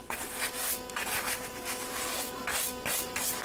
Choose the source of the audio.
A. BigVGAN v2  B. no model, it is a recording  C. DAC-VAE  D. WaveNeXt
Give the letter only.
B